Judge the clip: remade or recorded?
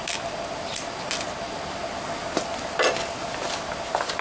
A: recorded